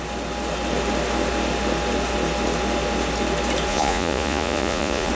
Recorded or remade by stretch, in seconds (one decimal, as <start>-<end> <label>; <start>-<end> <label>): 0.0-3.7 recorded; 3.7-5.1 remade